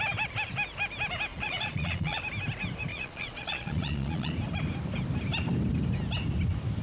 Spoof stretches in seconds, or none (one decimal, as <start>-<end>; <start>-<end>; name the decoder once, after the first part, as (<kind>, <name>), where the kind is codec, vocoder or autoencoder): 1.3-2.2 (vocoder, Vocos); 2.9-4.3

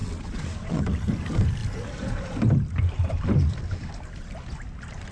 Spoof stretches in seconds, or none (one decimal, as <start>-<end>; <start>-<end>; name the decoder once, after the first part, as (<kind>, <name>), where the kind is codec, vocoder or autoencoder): 0.0-0.8 (vocoder, Vocos)

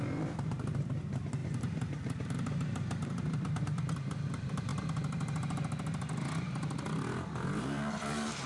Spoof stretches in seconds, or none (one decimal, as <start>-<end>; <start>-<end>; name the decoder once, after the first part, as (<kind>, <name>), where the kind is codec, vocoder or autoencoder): 0.0-4.7 (vocoder, BigVGAN v2); 7.6-8.5

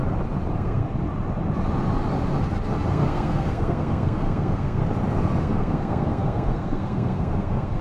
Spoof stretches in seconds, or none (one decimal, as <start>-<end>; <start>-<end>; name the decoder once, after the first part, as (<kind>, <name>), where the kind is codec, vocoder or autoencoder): 0.5-0.9 (codec, SNAC); 2.9-4.8; 5.4-7.8